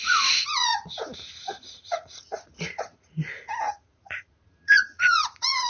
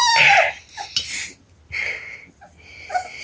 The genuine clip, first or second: second